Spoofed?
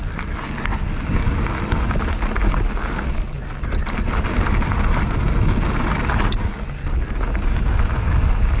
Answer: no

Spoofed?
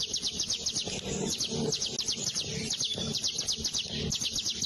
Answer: no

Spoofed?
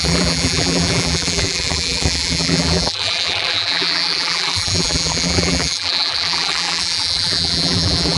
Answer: yes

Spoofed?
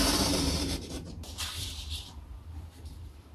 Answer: yes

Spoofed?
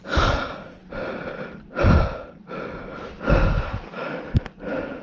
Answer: no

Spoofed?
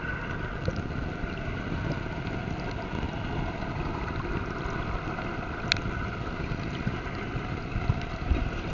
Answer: no